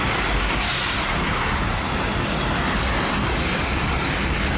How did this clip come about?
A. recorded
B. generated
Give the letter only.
A